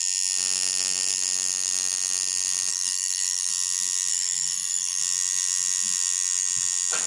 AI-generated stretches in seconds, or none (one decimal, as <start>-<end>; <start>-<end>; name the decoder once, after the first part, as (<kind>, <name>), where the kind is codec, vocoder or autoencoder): 2.7-3.5 (codec, SNAC); 4.1-5.0